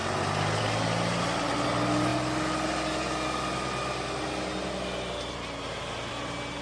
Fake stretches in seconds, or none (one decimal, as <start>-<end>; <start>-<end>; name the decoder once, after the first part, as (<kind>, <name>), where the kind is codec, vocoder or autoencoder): none